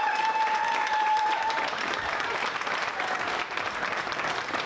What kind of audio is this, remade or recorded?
remade